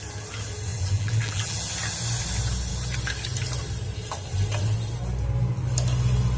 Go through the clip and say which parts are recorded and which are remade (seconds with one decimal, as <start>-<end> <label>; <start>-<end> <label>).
0.0-0.7 recorded; 0.7-1.7 remade; 1.7-6.4 recorded